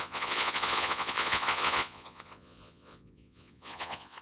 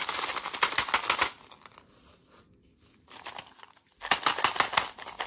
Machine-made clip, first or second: first